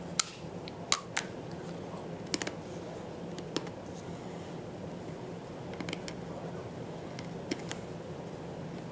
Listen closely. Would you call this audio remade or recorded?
recorded